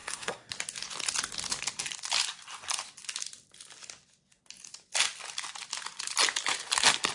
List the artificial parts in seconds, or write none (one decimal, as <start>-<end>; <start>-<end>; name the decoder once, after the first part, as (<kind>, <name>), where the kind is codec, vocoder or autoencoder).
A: 0.0-0.5 (codec, SNAC)